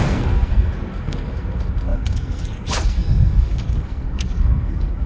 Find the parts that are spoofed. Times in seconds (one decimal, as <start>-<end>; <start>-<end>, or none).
0.0-5.1